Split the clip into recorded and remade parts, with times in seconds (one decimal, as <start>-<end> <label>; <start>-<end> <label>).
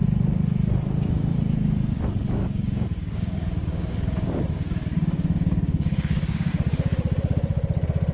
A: 0.0-2.4 recorded; 2.4-6.5 remade; 6.5-8.1 recorded